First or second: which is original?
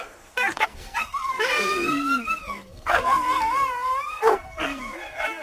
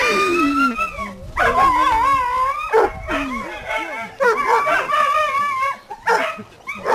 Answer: second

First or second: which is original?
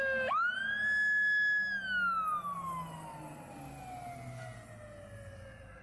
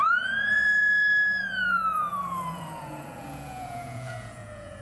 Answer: first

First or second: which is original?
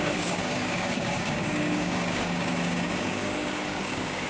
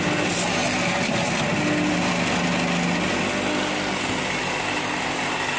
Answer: second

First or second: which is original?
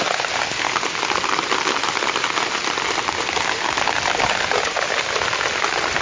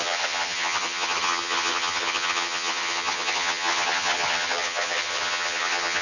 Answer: first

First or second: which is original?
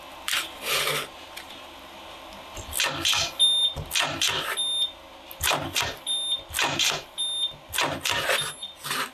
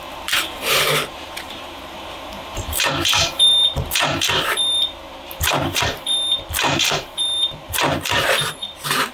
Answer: first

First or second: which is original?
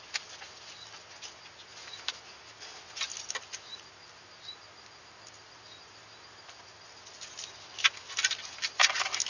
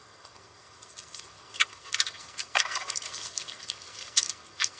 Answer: first